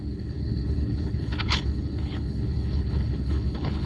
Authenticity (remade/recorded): remade